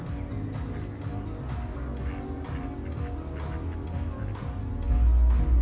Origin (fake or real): real